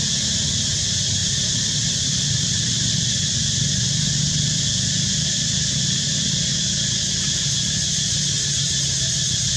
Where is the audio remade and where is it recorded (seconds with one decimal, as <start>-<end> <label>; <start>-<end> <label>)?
0.0-1.2 recorded; 1.2-5.8 remade; 5.8-9.6 recorded